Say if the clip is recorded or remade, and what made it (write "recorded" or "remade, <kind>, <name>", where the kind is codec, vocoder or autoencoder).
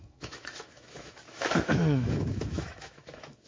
remade, autoencoder, DAC-VAE